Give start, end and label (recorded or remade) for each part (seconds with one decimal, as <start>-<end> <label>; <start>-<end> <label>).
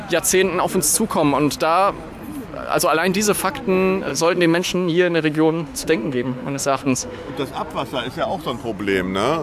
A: 0.0-4.1 recorded; 4.1-7.3 remade; 7.3-9.4 recorded